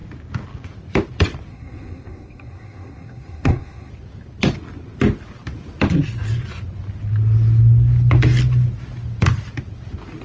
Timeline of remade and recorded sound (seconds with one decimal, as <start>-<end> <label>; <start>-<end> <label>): 0.0-1.5 recorded; 1.5-3.9 remade; 3.9-10.2 recorded